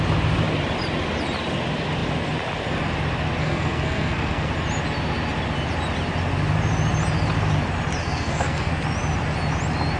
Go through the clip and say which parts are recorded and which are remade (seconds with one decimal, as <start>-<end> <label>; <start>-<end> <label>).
0.0-3.4 recorded; 3.4-4.5 remade; 4.5-8.0 recorded; 8.0-8.7 remade; 8.7-10.0 recorded